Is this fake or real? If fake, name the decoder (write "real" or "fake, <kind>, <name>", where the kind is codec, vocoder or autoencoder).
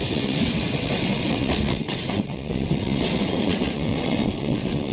fake, vocoder, WaveNeXt